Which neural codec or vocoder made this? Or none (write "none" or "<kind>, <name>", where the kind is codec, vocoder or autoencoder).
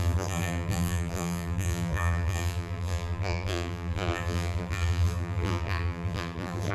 vocoder, BigVGAN v2